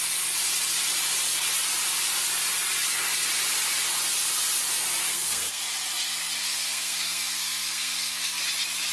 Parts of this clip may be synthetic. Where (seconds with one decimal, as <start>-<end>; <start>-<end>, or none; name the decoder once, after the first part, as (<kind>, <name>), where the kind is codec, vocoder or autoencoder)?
5.0-5.6 (codec, SNAC); 6.4-8.4